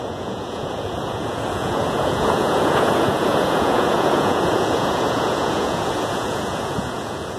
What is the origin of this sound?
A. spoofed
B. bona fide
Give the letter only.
A